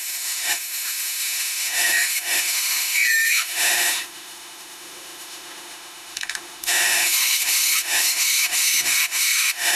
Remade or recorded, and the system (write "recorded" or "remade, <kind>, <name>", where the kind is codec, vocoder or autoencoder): remade, autoencoder, DAC-VAE